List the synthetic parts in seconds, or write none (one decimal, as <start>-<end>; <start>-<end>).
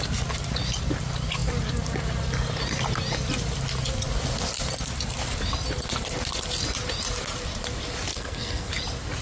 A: 8.1-8.7